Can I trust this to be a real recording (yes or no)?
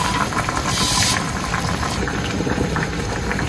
no